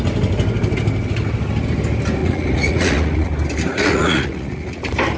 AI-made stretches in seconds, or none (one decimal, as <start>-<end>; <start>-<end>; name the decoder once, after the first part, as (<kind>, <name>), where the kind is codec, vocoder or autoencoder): 2.2-3.3 (vocoder, Vocos); 3.7-4.8